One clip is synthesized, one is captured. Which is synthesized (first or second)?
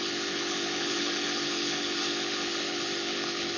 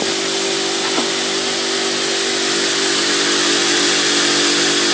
first